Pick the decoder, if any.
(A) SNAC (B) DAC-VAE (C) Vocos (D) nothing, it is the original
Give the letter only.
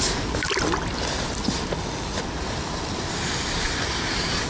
D